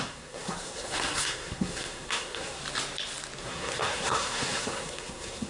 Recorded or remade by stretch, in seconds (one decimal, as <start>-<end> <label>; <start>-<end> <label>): 0.0-2.6 remade; 2.6-3.4 recorded; 3.4-5.5 remade